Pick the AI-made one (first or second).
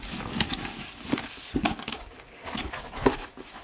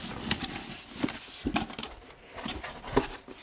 first